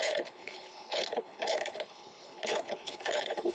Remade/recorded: remade